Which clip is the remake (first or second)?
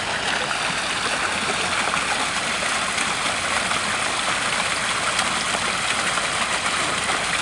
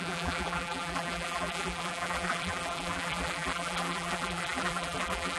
second